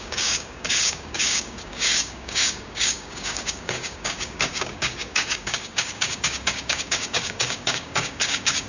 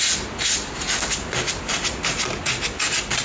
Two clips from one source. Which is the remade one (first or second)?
first